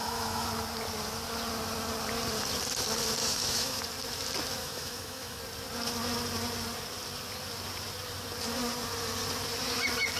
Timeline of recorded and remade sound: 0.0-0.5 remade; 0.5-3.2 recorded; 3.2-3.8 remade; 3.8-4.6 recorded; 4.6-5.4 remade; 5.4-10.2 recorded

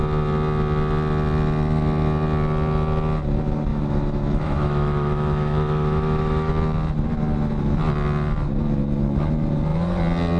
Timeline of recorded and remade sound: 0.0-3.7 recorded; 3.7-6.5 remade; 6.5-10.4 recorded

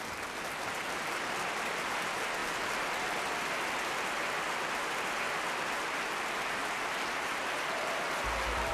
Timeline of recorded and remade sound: 0.0-8.7 recorded

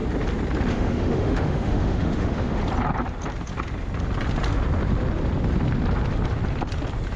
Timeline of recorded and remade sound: 0.0-0.7 recorded; 0.7-2.6 remade; 2.6-7.2 recorded

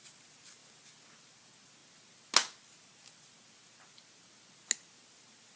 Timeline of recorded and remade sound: 0.0-5.6 recorded

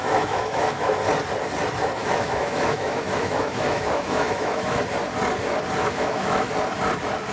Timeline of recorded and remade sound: 0.0-1.0 remade; 1.0-2.0 recorded; 2.0-4.8 remade; 4.8-5.8 recorded; 5.8-6.5 remade; 6.5-7.3 recorded

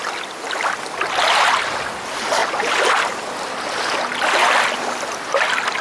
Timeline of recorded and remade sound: 0.0-5.8 recorded